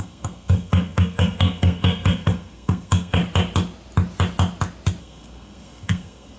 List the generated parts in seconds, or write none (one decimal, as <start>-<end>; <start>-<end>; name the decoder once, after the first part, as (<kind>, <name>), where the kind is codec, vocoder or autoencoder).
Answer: 0.0-3.2 (codec, SNAC); 5.0-6.4